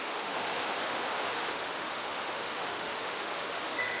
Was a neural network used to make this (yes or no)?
yes